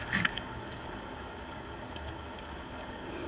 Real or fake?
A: fake